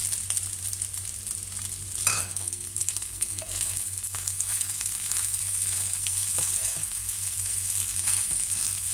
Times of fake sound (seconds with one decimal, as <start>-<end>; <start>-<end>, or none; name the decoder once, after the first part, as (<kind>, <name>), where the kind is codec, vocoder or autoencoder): 2.1-8.9 (codec, SNAC)